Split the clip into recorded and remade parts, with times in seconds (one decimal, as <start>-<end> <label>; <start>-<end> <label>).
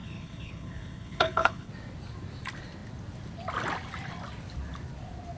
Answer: 0.0-1.7 remade; 1.7-5.4 recorded